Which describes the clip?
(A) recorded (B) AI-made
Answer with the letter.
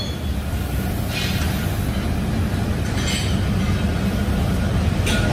A